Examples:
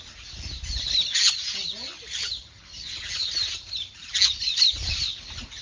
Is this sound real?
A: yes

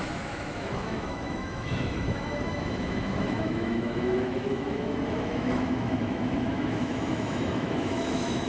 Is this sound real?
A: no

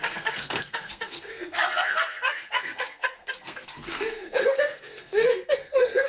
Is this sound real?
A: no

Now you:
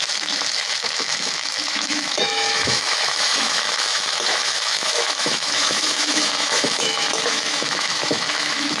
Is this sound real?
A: no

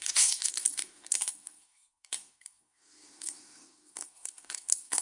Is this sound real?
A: no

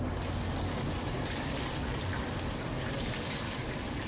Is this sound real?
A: yes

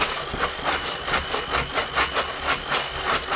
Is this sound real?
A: yes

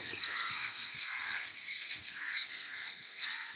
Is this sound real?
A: no